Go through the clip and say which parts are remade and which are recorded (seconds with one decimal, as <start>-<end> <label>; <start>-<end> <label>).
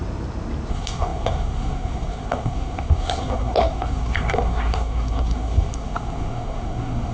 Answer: 0.0-0.7 recorded; 0.7-7.1 remade